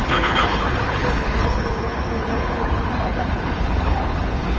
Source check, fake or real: fake